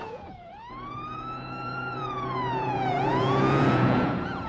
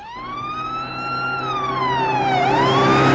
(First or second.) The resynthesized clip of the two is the first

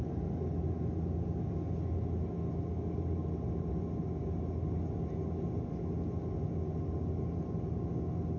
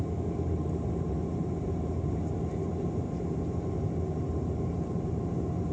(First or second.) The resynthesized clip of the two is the second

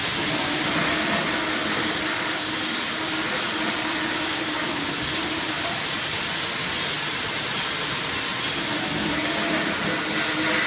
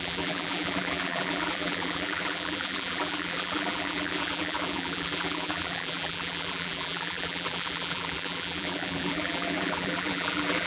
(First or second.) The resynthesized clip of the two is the second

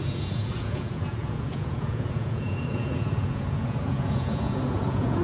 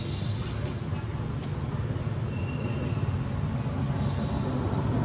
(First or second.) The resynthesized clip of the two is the first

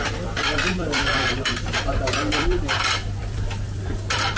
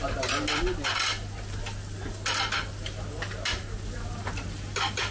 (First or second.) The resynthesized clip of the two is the first